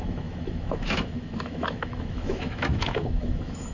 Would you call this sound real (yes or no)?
no